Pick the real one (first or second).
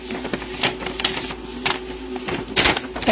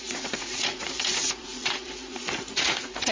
first